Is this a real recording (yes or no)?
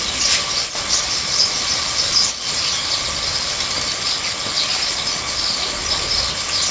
yes